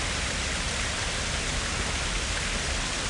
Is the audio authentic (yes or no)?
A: yes